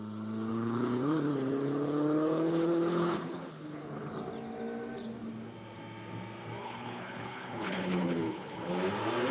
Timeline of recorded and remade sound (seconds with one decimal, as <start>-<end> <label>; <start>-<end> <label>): 0.0-0.5 recorded; 0.5-4.1 remade; 4.1-6.6 recorded; 6.6-8.7 remade; 8.7-9.3 recorded